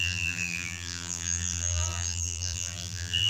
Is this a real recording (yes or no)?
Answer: no